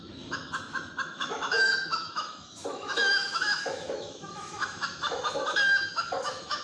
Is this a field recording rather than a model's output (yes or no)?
no